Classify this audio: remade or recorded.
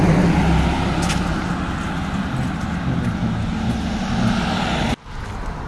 recorded